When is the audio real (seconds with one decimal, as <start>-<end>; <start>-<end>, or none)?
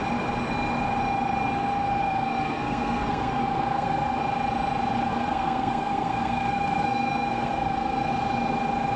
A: 0.0-2.0; 4.2-5.1; 8.1-9.0